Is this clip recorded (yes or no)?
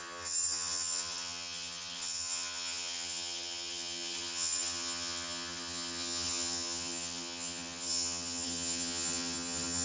no